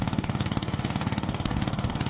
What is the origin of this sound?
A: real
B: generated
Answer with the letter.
B